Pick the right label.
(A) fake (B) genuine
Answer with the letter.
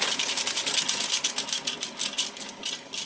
B